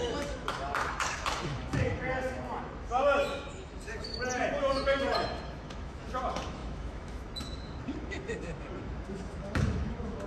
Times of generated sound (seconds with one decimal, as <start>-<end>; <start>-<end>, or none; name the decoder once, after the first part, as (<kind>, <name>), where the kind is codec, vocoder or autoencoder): 0.0-4.1 (autoencoder, DAC-VAE); 4.6-10.3